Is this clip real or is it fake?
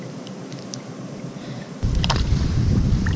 fake